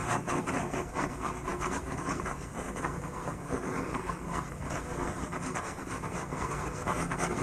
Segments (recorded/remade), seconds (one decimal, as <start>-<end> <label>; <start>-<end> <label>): 0.0-7.4 remade